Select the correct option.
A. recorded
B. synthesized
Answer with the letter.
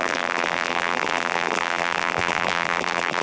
B